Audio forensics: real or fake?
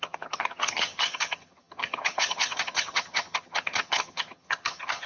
fake